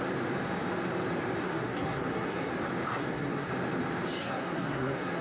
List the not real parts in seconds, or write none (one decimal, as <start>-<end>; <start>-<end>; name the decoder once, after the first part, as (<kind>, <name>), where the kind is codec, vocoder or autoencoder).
1.4-2.5 (codec, SNAC); 2.9-3.5; 4.2-5.2

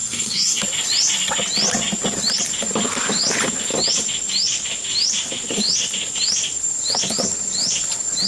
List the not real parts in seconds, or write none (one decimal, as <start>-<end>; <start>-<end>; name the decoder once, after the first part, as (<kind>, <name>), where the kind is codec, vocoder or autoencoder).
0.0-0.6 (codec, SNAC)